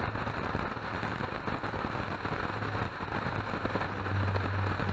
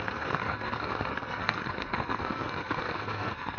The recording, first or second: first